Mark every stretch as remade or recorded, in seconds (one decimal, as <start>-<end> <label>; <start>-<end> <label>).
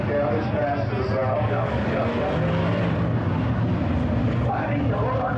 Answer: 0.0-1.2 recorded; 1.2-1.9 remade; 1.9-4.2 recorded; 4.2-4.9 remade; 4.9-5.4 recorded